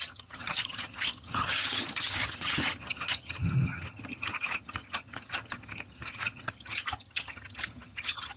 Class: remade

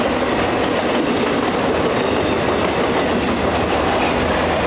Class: recorded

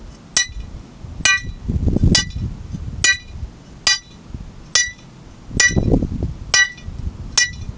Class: recorded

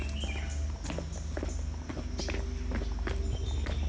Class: recorded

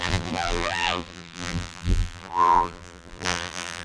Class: remade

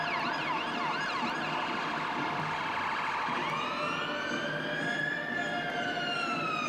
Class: recorded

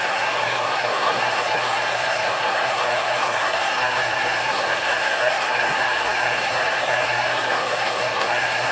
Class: remade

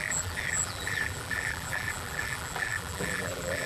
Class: remade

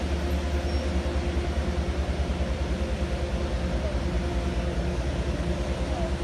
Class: recorded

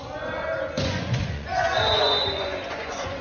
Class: remade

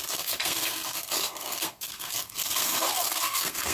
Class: remade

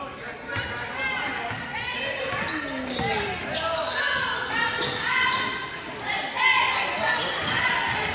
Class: recorded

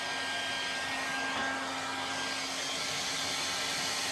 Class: recorded